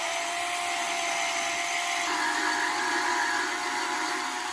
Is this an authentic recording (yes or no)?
yes